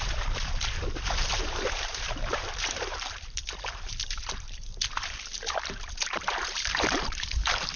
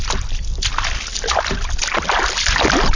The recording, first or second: second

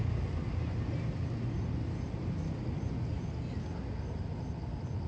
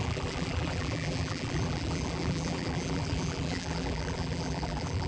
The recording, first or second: first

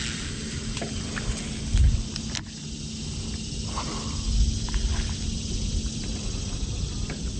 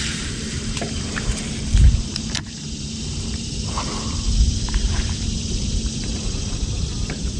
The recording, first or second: first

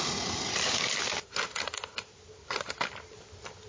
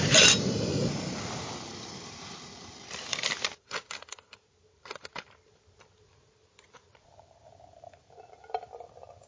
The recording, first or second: first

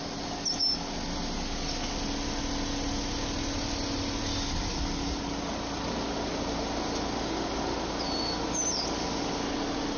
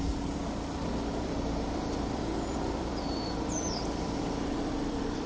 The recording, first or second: first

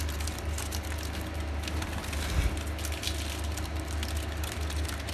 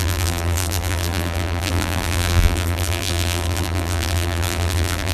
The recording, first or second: first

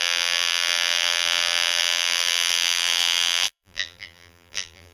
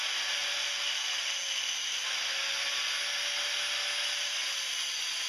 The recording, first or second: second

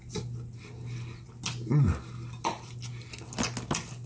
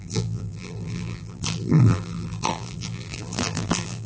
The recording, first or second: first